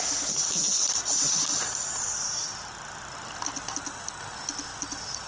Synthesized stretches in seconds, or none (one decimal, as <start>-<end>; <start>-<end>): 2.1-3.9